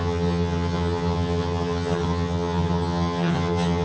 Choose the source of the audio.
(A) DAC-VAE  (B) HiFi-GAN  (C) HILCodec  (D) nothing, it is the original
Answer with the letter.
B